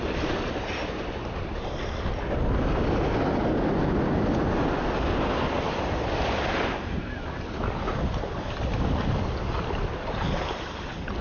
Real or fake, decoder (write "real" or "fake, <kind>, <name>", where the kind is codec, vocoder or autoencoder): real